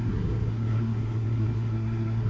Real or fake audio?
fake